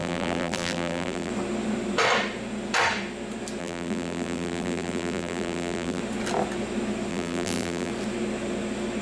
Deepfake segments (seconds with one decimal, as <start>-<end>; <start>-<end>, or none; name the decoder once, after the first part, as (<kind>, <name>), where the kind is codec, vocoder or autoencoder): 0.0-1.3 (vocoder, BigVGAN v2); 3.6-6.0; 7.1-7.9